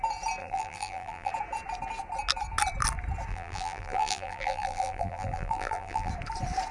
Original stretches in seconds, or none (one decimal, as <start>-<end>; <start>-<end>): 0.0-0.4; 1.3-3.3; 6.1-6.7